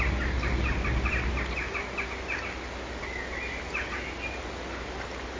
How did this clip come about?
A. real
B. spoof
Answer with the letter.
A